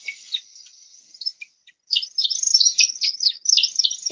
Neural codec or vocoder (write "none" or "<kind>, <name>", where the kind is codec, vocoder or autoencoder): none